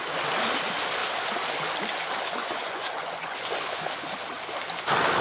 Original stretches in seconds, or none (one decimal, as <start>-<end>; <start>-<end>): 0.0-2.4; 3.9-5.2